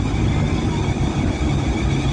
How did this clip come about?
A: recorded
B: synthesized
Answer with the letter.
A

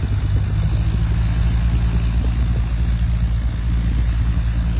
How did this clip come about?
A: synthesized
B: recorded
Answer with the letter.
B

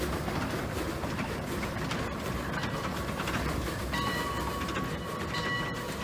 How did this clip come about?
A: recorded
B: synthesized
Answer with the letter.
B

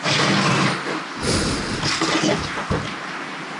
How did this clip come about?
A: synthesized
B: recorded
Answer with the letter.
B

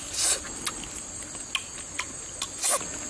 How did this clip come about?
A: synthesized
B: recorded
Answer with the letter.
B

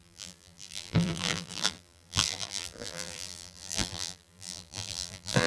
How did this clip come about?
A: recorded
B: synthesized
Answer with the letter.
B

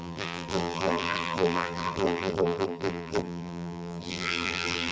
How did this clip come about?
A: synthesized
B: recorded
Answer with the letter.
A